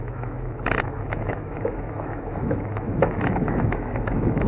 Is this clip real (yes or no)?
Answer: no